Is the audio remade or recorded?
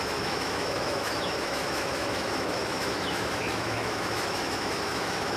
remade